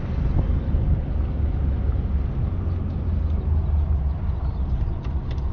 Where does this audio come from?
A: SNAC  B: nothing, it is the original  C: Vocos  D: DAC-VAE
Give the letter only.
B